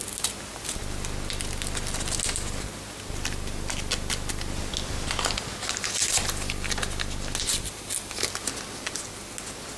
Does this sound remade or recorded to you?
recorded